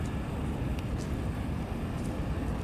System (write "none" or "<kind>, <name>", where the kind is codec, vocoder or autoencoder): none